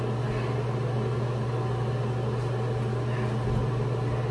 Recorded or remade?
recorded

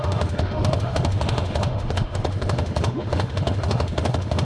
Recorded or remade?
remade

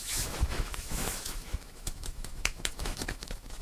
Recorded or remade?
remade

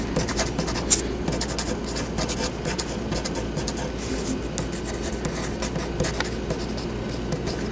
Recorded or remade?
recorded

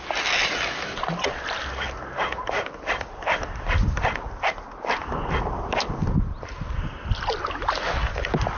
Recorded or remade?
recorded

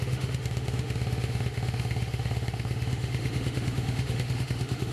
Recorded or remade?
remade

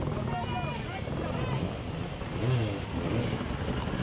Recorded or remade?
recorded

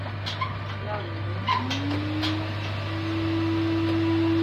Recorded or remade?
recorded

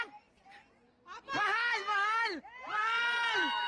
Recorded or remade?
recorded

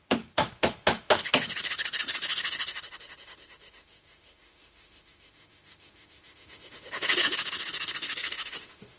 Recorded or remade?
remade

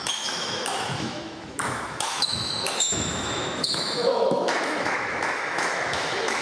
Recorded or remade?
remade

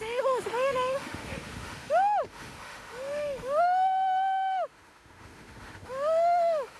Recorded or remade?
remade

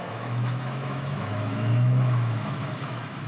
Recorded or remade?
remade